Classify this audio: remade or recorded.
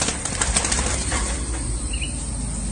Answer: recorded